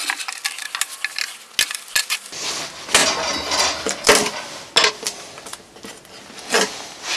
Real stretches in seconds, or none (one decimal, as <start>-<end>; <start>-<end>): 0.0-7.2